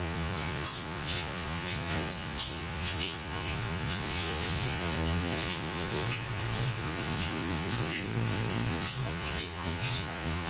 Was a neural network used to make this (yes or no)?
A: yes